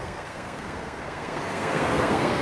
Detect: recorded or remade remade